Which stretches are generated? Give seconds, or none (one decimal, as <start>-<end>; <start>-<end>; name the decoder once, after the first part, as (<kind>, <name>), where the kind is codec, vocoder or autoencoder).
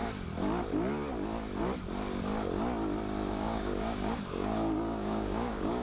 3.3-5.8 (codec, DAC)